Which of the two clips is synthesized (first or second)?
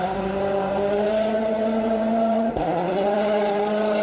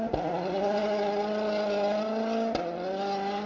first